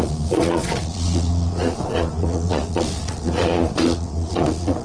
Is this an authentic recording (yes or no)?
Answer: no